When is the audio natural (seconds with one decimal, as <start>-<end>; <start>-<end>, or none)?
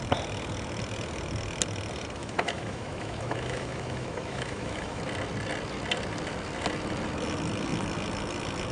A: 0.0-2.2; 5.0-8.7